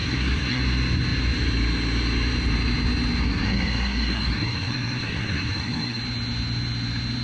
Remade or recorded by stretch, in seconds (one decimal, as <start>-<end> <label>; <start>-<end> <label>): 0.0-0.6 remade; 0.6-3.2 recorded; 3.2-6.0 remade; 6.0-7.2 recorded